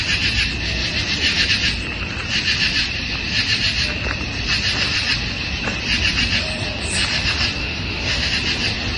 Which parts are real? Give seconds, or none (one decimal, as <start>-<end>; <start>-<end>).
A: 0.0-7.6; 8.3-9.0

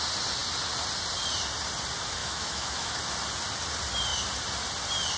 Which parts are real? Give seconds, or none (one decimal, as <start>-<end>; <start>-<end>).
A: 0.0-2.2; 3.0-5.2

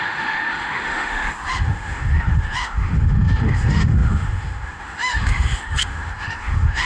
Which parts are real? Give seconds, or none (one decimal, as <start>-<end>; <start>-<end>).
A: none

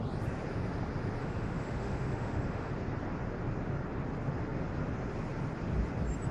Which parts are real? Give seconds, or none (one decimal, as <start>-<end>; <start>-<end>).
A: 0.0-1.2; 2.7-6.3

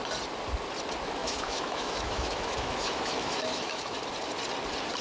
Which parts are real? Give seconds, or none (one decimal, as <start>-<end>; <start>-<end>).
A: 0.0-1.2; 4.0-5.0